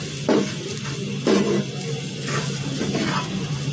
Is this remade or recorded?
recorded